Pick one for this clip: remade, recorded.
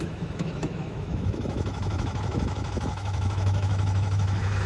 remade